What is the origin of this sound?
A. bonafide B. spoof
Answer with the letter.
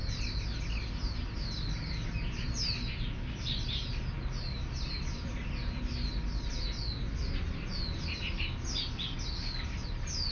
A